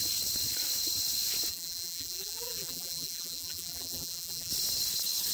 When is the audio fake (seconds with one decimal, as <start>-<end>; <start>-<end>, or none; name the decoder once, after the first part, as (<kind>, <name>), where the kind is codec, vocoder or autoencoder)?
1.5-4.5 (vocoder, BigVGAN v2)